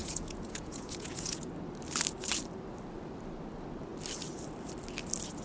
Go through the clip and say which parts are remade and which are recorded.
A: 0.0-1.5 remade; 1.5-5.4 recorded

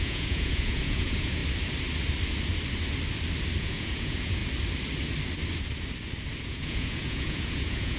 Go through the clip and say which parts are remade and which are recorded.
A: 0.0-1.4 remade; 1.4-3.6 recorded; 3.6-4.4 remade; 4.4-6.4 recorded; 6.4-8.0 remade

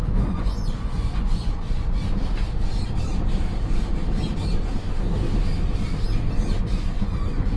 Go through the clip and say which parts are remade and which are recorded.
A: 0.0-2.0 remade; 2.0-6.6 recorded; 6.6-7.6 remade

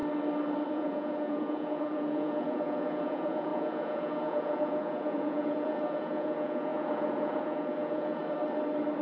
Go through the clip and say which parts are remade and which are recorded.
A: 0.0-0.7 recorded; 0.7-8.2 remade; 8.2-9.0 recorded

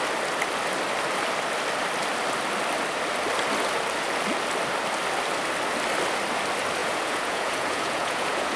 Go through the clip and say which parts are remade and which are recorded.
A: 0.0-6.8 recorded; 6.8-8.6 remade